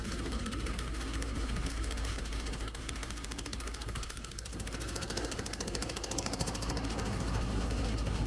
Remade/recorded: remade